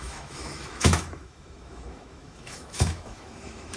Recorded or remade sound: remade